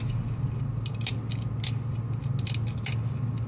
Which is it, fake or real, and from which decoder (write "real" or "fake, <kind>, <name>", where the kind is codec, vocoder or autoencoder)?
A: real